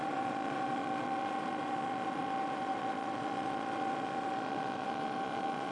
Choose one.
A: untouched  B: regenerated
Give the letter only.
B